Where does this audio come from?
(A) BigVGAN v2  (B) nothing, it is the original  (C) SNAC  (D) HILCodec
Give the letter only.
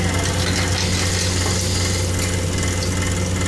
B